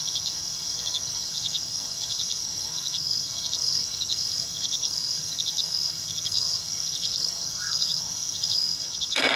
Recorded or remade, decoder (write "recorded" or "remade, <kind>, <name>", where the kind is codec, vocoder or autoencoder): remade, codec, SNAC